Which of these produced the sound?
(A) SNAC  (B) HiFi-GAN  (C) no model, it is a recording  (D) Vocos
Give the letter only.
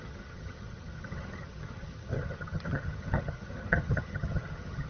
B